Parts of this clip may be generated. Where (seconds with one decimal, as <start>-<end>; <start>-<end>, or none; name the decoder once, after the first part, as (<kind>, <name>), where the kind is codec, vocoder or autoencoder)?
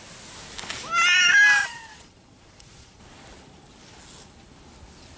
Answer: 1.6-3.0 (vocoder, Vocos)